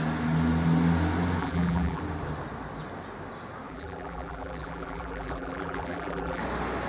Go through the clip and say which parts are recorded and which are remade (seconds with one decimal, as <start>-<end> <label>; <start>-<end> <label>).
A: 0.0-1.4 recorded; 1.4-2.0 remade; 2.0-3.7 recorded; 3.7-6.4 remade; 6.4-6.9 recorded